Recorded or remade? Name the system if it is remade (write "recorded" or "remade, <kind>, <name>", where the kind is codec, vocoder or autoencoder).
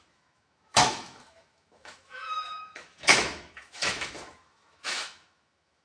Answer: remade, autoencoder, DAC-VAE